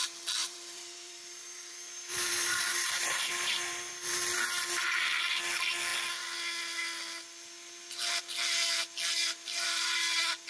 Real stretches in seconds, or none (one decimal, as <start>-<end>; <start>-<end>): 0.0-0.4; 4.4-9.2; 10.0-10.5